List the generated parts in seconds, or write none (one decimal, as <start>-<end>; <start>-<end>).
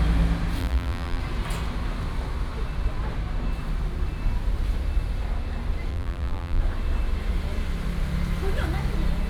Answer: 0.6-1.2; 5.9-6.6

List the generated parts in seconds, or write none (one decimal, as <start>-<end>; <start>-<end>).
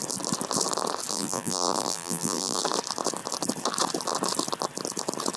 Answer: 1.1-2.6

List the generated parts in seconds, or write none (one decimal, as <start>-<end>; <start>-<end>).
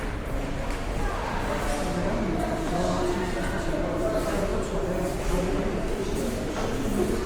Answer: 0.0-1.3; 3.9-4.5; 5.2-6.0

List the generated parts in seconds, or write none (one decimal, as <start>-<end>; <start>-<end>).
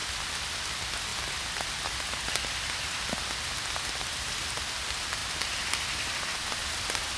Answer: none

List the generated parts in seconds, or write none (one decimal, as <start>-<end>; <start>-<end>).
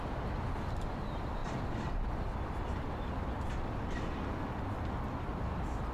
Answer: 1.4-4.9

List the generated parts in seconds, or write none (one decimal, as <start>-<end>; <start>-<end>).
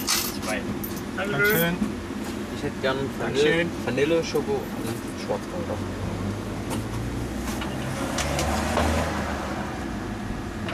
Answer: none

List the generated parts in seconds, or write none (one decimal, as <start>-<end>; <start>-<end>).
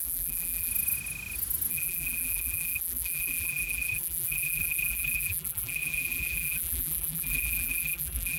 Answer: 0.0-0.7; 1.7-8.4